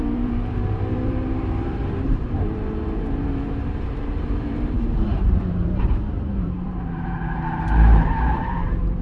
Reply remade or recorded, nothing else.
remade